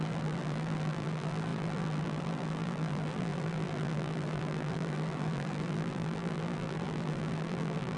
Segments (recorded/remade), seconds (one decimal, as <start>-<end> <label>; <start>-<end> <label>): 0.0-8.0 remade